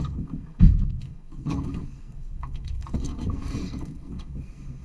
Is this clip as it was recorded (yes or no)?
no